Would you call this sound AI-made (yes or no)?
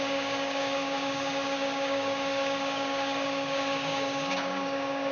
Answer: yes